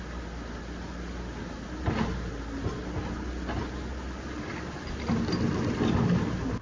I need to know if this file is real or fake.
real